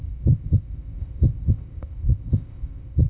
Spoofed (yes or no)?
yes